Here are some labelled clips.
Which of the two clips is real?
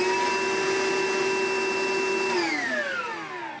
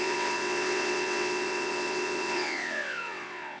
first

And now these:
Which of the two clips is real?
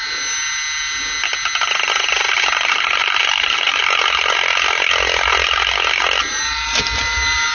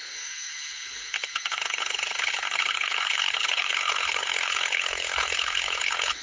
first